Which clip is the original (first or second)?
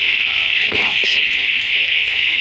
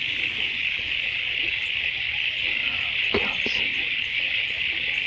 second